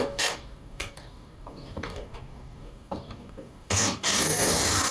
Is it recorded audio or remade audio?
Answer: remade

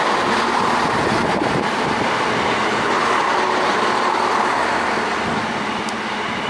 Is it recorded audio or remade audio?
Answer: recorded